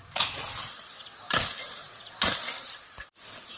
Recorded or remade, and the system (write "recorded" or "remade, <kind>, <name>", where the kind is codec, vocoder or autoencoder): recorded